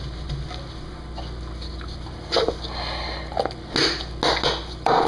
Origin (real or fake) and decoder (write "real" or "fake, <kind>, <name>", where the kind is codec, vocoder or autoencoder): real